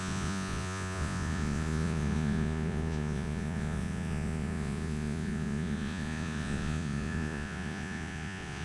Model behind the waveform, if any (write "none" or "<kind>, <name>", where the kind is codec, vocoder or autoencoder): vocoder, Vocos